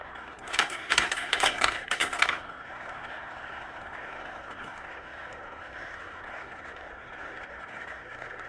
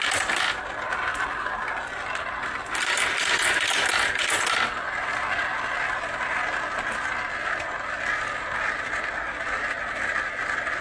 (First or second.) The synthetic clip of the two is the first